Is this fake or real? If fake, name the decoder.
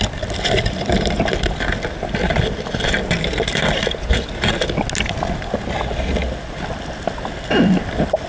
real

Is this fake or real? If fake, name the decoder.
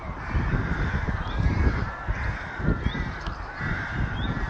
fake, vocoder, BigVGAN v2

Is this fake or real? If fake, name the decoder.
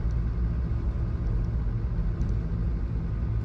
real